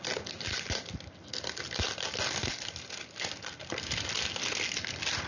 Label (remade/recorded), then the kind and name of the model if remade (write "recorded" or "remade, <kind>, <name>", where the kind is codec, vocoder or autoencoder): recorded